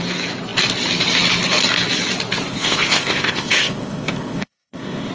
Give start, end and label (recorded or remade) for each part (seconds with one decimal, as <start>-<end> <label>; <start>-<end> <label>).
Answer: 0.0-2.5 recorded; 2.5-5.1 remade